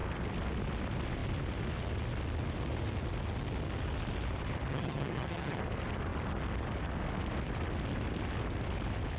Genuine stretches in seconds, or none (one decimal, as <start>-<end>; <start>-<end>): 0.0-4.7; 5.6-9.2